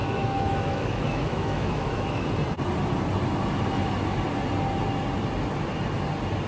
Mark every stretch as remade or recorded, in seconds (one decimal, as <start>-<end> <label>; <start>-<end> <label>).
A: 0.0-2.3 remade; 2.3-6.5 recorded